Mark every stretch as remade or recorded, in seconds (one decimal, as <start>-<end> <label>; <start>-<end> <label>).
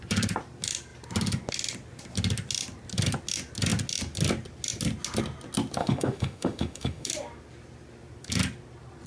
0.0-5.8 recorded; 5.8-7.1 remade; 7.1-9.1 recorded